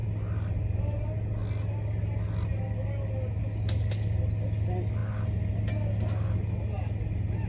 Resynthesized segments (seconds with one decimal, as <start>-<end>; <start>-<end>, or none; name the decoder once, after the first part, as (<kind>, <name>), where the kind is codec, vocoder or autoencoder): none